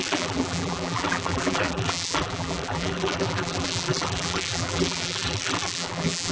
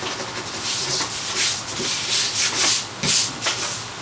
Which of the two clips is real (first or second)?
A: second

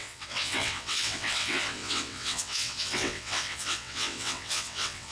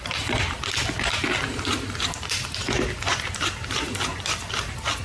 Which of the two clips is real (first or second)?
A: second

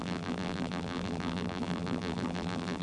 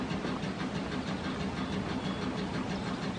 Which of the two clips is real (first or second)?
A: second